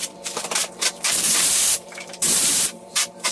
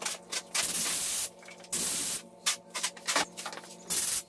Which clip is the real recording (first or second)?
second